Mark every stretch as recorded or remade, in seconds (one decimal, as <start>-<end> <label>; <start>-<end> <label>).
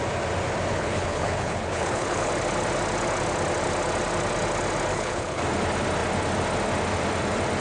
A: 0.0-0.7 recorded; 0.7-2.3 remade; 2.3-4.9 recorded; 4.9-5.4 remade; 5.4-7.6 recorded